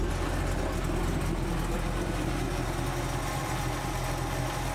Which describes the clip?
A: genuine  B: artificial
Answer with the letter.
A